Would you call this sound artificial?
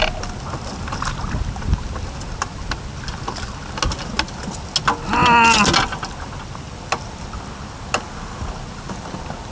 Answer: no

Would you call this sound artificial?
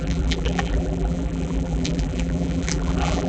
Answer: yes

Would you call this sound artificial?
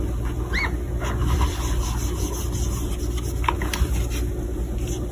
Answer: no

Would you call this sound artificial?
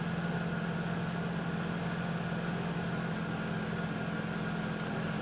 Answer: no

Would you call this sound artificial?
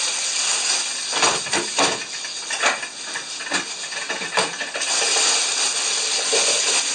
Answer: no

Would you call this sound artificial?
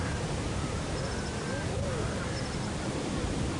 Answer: yes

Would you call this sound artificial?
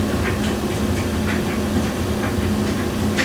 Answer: no